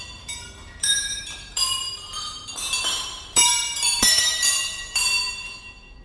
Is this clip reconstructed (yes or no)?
yes